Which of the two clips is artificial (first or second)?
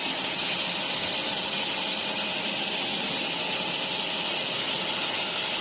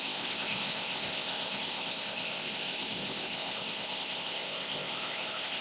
second